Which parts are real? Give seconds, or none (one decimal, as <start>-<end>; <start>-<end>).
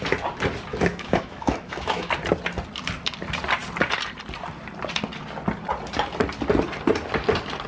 0.0-0.7; 2.1-7.7